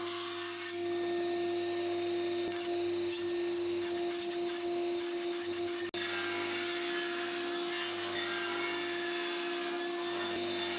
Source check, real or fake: real